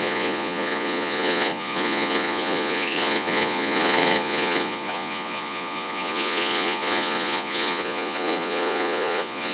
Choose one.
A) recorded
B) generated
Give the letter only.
B